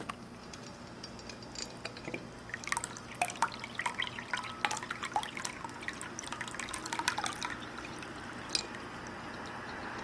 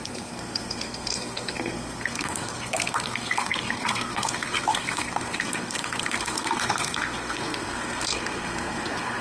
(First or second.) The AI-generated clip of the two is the second